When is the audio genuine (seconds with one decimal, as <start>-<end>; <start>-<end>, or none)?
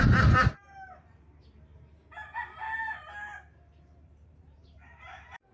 1.7-3.8